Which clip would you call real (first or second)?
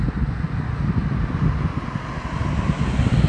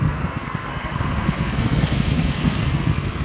first